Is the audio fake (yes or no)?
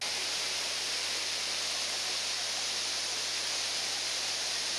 no